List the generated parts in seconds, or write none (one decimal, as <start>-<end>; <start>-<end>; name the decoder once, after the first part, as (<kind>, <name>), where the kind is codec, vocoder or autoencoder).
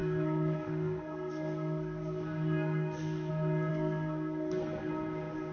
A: 0.0-3.3 (codec, SNAC); 3.7-4.9